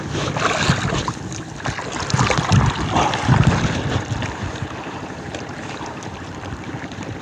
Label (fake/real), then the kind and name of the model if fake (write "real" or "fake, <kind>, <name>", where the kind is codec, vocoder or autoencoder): real